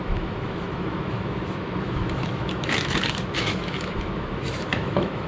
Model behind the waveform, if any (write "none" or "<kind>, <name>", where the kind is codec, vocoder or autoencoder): autoencoder, DAC-VAE